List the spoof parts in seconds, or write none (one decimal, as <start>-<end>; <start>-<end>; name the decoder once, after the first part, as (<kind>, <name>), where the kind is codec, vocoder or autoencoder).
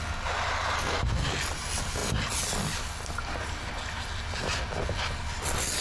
none